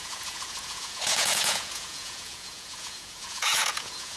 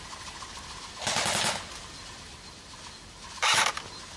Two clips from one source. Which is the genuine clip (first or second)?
second